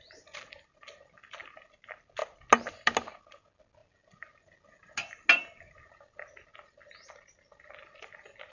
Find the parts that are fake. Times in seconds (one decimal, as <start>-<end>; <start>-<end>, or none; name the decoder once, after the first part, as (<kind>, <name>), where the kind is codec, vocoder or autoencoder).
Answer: none